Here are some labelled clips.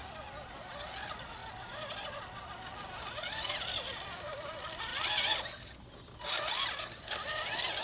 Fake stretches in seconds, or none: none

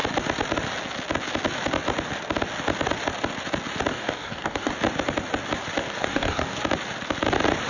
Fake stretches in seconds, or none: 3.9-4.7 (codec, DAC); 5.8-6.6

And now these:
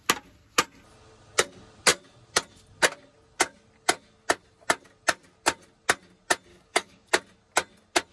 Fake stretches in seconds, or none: 6.5-7.1 (codec, DAC)

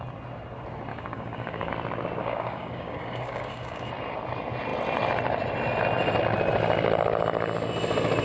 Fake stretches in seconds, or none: 0.9-1.7 (codec, DAC); 2.2-3.9

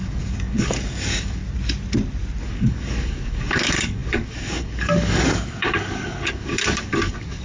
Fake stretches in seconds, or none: 0.0-1.4 (codec, DAC); 2.4-7.4

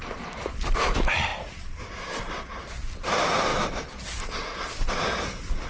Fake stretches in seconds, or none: none